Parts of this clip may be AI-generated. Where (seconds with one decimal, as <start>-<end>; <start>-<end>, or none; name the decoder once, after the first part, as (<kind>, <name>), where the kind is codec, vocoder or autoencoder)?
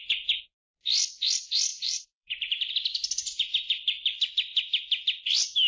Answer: 1.7-2.7 (vocoder, BigVGAN v2)